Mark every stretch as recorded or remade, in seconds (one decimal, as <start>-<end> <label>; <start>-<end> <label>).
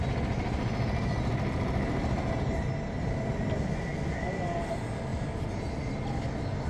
0.0-6.7 recorded